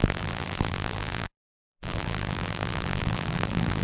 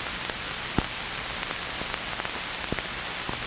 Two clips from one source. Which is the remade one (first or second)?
first